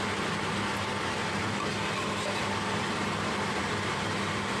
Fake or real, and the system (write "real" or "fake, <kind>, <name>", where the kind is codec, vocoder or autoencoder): real